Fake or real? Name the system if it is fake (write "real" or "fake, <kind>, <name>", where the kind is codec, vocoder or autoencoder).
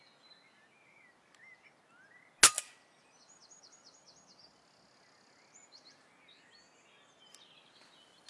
real